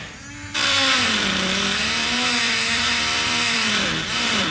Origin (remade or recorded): remade